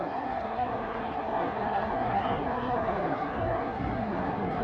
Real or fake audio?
fake